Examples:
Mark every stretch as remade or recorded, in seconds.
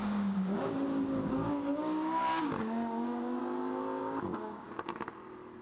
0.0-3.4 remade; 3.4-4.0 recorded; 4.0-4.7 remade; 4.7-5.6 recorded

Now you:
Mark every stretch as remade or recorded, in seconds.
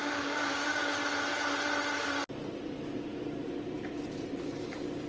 0.0-0.8 remade; 0.8-5.1 recorded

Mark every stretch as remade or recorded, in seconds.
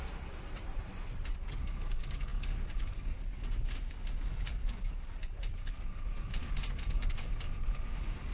0.0-1.6 recorded; 1.6-6.4 remade; 6.4-6.9 recorded; 6.9-8.3 remade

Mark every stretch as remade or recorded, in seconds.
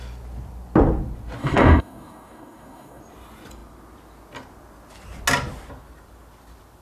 0.0-1.4 recorded; 1.4-3.0 remade; 3.0-6.8 recorded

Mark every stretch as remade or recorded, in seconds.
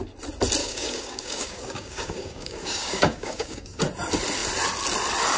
0.0-0.6 recorded; 0.6-3.8 remade; 3.8-5.4 recorded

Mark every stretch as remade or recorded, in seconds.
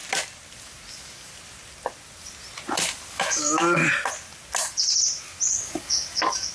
0.0-0.9 recorded; 0.9-1.3 remade; 1.3-3.1 recorded; 3.1-3.8 remade; 3.8-5.5 recorded; 5.5-6.5 remade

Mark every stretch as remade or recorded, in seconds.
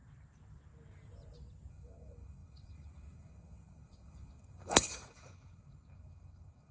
0.0-1.7 recorded; 1.7-6.7 remade